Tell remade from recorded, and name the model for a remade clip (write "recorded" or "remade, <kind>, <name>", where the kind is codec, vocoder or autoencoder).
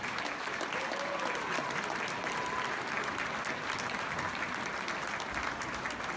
recorded